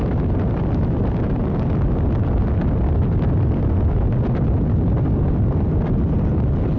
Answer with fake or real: real